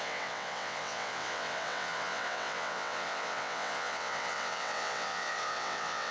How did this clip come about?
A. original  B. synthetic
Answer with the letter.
B